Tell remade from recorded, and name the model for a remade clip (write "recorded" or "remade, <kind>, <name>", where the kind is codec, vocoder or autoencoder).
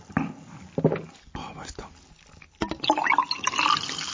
recorded